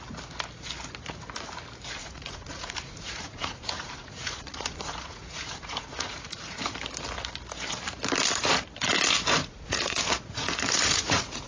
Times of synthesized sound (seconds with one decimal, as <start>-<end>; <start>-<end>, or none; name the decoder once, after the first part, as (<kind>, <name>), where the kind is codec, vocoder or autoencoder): 2.0-6.4 (vocoder, Vocos); 9.4-11.5